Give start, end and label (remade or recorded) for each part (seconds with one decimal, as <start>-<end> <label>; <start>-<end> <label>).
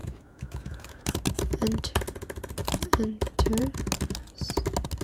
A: 0.0-1.1 remade; 1.1-5.0 recorded